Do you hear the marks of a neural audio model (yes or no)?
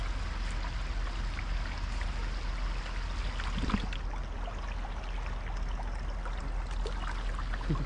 no